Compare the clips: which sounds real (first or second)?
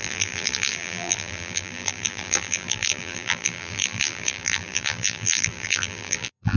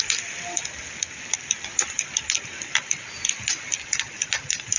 second